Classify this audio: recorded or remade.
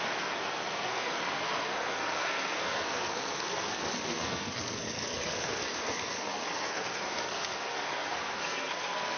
remade